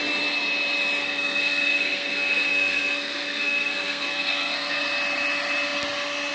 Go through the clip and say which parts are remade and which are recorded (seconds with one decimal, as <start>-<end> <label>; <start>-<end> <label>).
0.0-1.0 recorded; 1.0-4.8 remade; 4.8-6.3 recorded

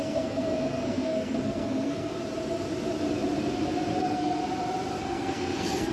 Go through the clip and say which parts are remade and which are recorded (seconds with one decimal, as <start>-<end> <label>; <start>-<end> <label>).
0.0-2.1 remade; 2.1-4.0 recorded; 4.0-4.4 remade; 4.4-5.0 recorded; 5.0-5.9 remade

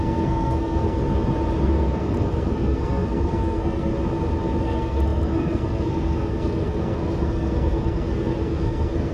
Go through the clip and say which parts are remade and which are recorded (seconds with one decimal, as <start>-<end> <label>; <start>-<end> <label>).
0.0-1.0 remade; 1.0-1.6 recorded; 1.6-3.9 remade; 3.9-4.6 recorded; 4.6-9.1 remade

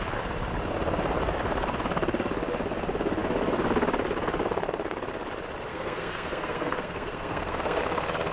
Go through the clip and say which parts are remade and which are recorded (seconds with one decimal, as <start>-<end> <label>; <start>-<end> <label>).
0.0-5.7 recorded; 5.7-7.8 remade; 7.8-8.3 recorded

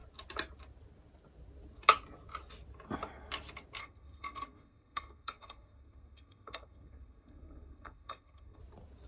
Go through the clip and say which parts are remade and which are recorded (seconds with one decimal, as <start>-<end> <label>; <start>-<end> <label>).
0.0-3.8 recorded; 3.8-8.6 remade; 8.6-9.1 recorded

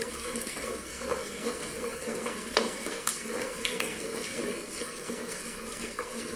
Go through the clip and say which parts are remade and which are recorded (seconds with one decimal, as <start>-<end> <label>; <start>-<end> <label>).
0.0-6.4 remade

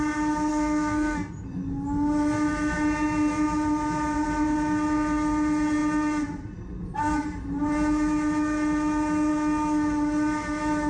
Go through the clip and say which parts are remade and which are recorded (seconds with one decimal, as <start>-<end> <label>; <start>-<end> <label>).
0.0-0.5 recorded; 0.5-1.3 remade; 1.3-10.9 recorded

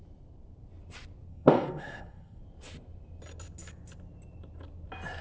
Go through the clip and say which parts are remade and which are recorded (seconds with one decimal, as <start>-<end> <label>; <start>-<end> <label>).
0.0-1.3 recorded; 1.3-2.4 remade; 2.4-5.2 recorded